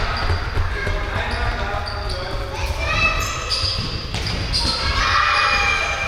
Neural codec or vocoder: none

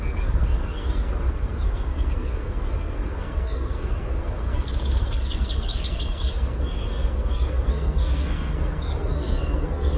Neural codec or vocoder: codec, SNAC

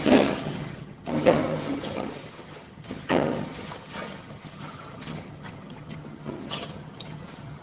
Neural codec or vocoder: vocoder, HiFi-GAN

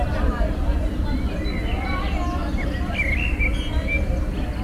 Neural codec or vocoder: none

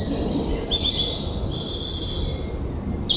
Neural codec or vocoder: none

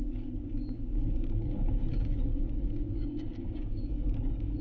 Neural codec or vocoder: codec, DAC